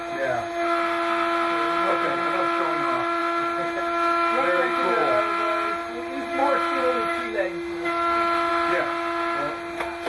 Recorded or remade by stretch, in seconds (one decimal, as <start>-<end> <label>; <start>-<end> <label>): 0.0-10.1 recorded